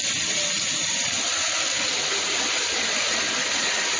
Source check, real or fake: real